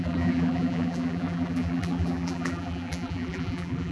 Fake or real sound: fake